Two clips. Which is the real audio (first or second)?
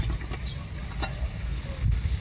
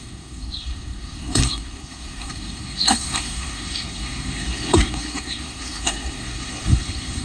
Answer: first